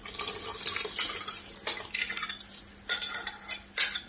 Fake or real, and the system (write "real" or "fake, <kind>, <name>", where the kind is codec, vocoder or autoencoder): real